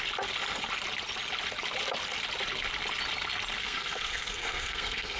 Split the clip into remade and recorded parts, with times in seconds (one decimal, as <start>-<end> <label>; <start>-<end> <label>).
0.0-3.6 recorded; 3.6-5.2 remade